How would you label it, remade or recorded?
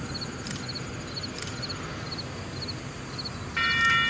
recorded